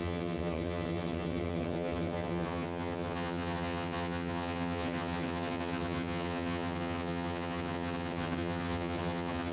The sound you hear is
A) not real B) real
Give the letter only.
A